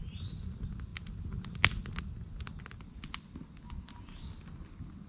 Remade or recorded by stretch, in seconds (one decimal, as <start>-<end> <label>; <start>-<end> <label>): 0.0-5.1 recorded